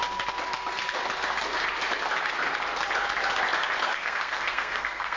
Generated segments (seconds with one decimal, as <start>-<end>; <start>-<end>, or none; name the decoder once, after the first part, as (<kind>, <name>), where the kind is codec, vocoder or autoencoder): 3.8-5.2 (codec, SNAC)